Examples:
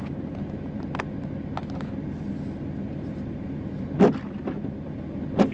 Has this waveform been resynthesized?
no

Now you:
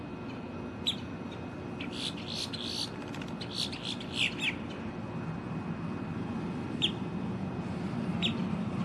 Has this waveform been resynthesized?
no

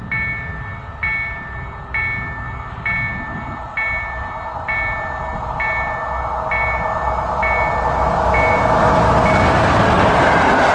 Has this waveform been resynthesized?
no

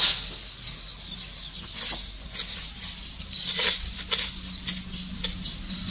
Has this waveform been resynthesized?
no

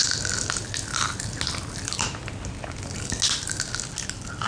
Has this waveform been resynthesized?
no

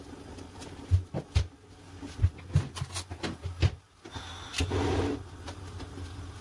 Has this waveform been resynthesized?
no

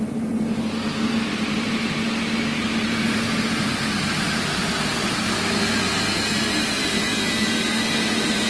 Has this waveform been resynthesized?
no